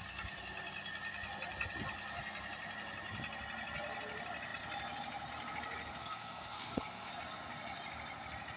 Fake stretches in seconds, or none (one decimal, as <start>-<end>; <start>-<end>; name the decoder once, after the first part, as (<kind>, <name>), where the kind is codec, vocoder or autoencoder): 6.0-7.1 (codec, SNAC)